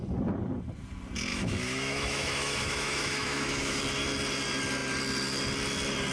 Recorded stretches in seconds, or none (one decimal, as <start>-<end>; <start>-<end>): 0.0-1.3; 3.8-6.1